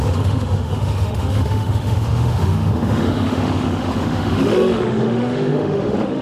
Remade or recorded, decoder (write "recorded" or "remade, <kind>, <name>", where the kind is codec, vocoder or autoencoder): remade, autoencoder, DAC-VAE